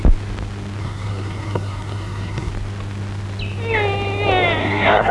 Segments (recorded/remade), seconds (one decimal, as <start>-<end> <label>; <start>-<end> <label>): 0.0-0.8 recorded; 0.8-2.5 remade; 2.5-4.6 recorded; 4.6-5.1 remade